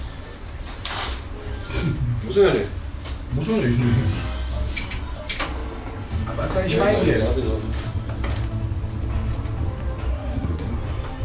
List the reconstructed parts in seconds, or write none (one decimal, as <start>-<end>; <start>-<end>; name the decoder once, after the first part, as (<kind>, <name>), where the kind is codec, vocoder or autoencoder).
10.1-10.7 (codec, SNAC)